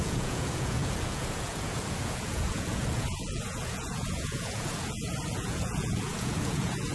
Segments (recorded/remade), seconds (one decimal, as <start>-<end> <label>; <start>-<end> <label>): 0.0-6.9 remade